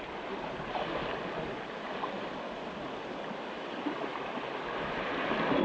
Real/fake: real